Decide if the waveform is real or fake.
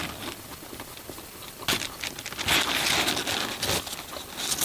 real